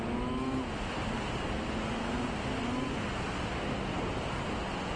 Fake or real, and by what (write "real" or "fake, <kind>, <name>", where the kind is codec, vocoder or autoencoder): real